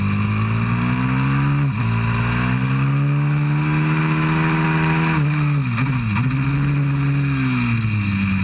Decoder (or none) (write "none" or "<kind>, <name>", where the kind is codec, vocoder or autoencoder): none